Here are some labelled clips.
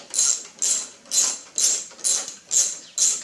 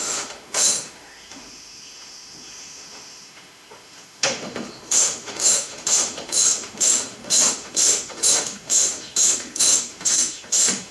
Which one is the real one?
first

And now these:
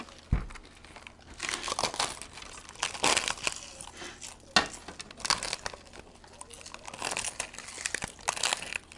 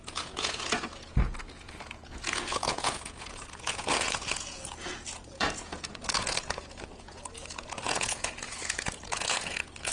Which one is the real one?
first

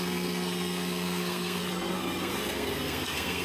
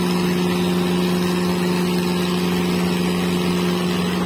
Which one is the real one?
second